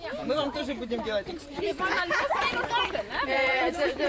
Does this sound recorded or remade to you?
remade